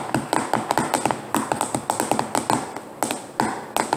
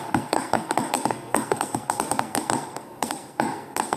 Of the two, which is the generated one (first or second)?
second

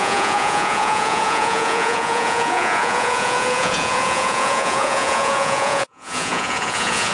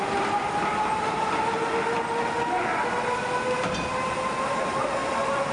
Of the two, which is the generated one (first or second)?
first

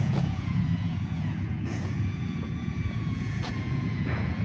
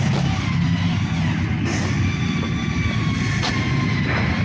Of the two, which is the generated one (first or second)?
first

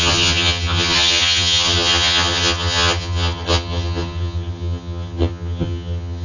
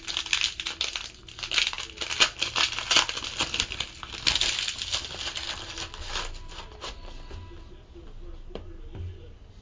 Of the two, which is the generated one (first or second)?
first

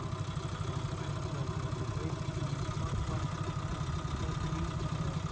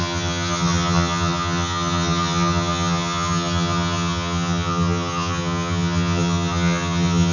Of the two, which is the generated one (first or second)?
second